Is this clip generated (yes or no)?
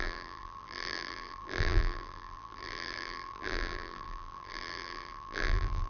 yes